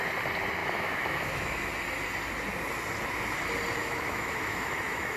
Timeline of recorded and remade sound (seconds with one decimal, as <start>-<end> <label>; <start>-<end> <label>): 0.0-0.6 recorded; 0.6-1.7 remade; 1.7-3.8 recorded; 3.8-5.2 remade